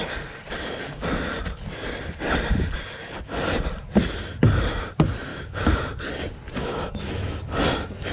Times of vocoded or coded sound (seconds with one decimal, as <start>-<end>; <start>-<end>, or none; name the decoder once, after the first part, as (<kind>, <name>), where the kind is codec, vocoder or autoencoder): 5.3-6.0 (autoencoder, DAC-VAE); 6.6-7.4